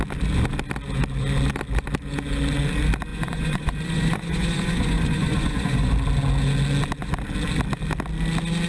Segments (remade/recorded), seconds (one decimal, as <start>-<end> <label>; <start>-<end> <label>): 0.0-3.1 recorded; 3.1-5.9 remade; 5.9-8.7 recorded